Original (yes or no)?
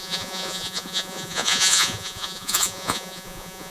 no